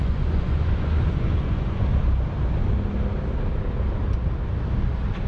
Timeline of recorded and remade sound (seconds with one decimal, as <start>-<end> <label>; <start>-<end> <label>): 0.0-2.0 remade; 2.0-5.3 recorded